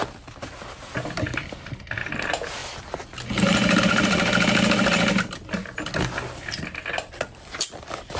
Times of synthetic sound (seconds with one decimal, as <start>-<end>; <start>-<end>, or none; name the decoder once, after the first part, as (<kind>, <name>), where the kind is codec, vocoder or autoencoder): none

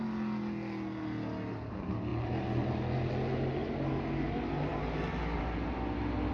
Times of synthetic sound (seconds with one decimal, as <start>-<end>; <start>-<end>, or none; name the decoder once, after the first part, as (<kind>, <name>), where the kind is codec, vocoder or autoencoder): none

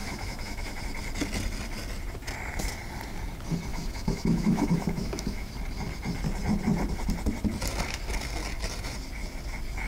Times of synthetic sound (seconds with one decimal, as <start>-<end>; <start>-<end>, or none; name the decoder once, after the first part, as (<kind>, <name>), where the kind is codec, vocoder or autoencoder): 0.0-0.8 (autoencoder, DAC-VAE); 3.7-5.5